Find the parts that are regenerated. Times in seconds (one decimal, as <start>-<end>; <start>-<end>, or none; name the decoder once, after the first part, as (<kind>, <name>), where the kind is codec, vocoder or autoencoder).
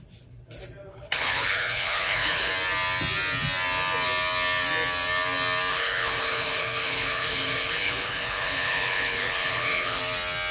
0.9-2.5 (codec, HILCodec); 5.7-10.0